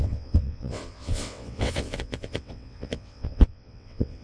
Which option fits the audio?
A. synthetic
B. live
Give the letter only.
A